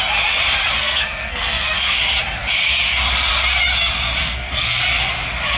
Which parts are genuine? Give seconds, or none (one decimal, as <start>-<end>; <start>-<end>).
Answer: 0.0-0.8; 2.0-4.2; 4.8-5.6